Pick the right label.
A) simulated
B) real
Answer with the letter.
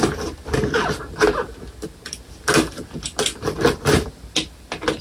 B